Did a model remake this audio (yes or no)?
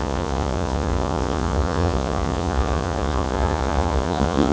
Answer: yes